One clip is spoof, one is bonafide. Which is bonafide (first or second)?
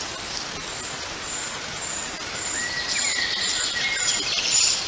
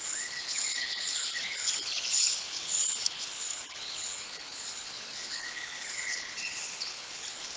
first